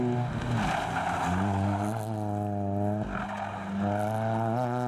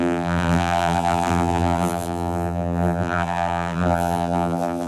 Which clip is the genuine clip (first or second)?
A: first